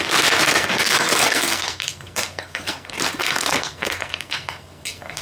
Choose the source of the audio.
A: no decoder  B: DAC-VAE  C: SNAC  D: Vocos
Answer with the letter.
C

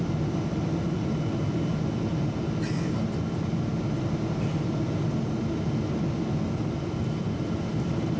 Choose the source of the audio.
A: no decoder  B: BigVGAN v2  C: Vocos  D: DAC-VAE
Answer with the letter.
A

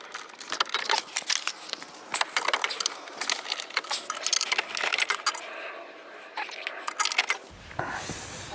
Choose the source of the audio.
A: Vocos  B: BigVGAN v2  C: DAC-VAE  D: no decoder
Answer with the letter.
D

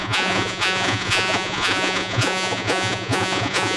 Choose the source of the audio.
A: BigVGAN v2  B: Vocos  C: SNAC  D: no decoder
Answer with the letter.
B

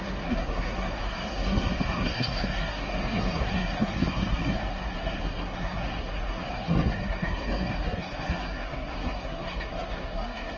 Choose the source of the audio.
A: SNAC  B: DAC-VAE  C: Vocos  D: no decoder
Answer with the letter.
A